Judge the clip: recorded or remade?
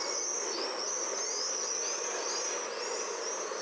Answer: recorded